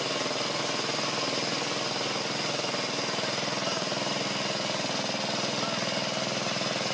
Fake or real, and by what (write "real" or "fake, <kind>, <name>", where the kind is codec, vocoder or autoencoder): real